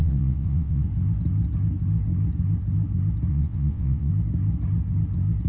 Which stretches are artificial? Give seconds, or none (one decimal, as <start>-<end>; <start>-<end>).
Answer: 0.0-0.9; 3.3-4.1